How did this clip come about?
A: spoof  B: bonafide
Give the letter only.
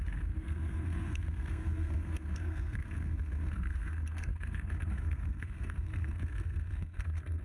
A